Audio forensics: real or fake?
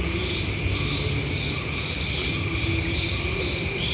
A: real